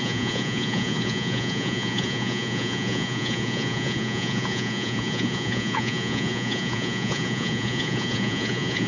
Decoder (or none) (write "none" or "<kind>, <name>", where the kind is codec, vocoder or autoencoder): vocoder, Vocos